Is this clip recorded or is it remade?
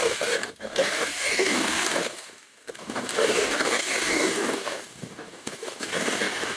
remade